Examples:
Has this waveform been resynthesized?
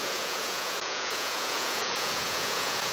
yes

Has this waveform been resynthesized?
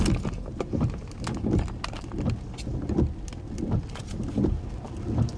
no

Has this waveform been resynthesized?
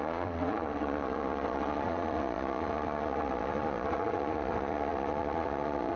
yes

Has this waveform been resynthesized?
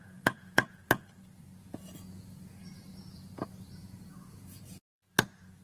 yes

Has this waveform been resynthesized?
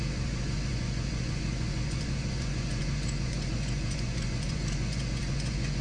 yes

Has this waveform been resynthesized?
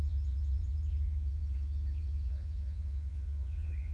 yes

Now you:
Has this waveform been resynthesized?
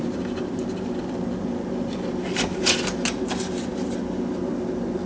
no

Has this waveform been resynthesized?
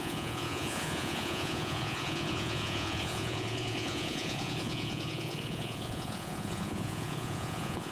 yes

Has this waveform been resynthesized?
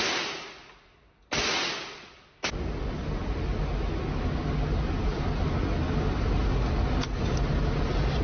no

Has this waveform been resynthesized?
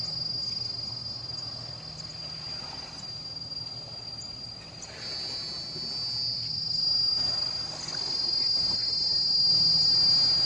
no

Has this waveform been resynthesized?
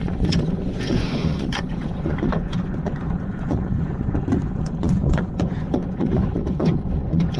yes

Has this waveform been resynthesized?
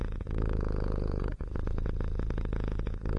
yes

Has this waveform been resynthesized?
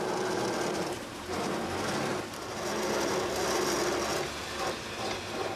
no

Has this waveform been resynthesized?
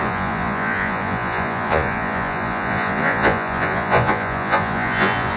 yes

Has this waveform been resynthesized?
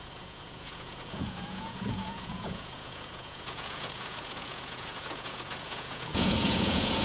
yes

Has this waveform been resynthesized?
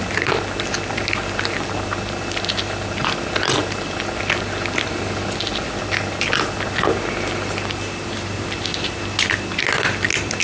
no